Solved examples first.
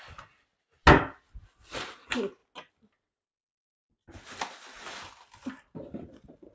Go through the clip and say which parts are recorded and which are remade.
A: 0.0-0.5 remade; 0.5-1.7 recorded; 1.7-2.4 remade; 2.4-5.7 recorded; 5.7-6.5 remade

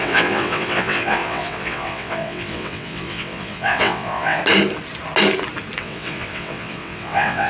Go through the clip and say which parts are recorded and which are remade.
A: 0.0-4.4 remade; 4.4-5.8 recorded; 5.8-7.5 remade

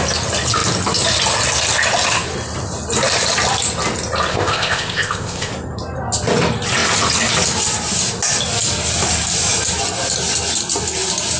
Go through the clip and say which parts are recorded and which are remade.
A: 0.0-4.3 recorded; 4.3-5.5 remade; 5.5-11.4 recorded

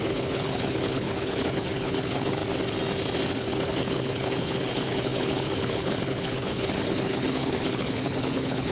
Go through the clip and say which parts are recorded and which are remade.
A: 0.0-2.4 remade; 2.4-3.3 recorded; 3.3-8.7 remade

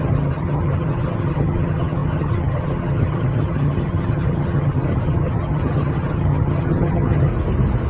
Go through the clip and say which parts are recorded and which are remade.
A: 0.0-7.3 remade; 7.3-7.9 recorded